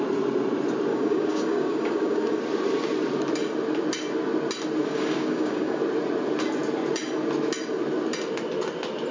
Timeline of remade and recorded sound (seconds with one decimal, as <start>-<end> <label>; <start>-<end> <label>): 0.0-0.9 recorded; 0.9-2.4 remade; 2.4-4.8 recorded; 4.8-5.8 remade; 5.8-9.1 recorded